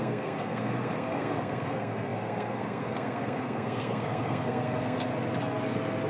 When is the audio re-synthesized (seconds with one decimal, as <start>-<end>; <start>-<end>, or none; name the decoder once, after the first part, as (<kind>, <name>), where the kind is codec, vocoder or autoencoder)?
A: 0.0-5.1 (codec, SNAC)